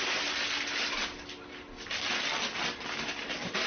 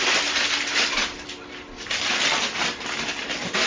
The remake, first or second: second